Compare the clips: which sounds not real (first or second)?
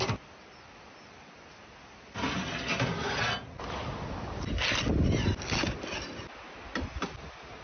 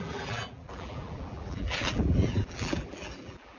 second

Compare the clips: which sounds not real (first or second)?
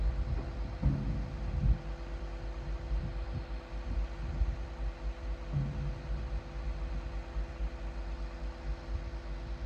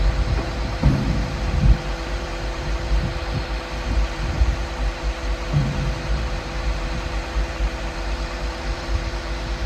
second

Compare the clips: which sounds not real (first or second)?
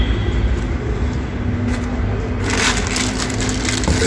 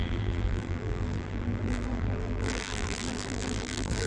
second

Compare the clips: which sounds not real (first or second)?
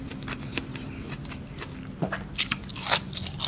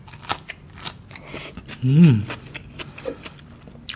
first